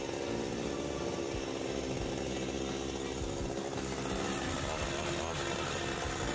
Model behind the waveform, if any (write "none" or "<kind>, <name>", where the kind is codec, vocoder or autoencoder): none